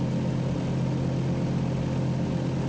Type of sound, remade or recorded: recorded